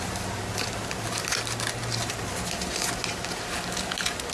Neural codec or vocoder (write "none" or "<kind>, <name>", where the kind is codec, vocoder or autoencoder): none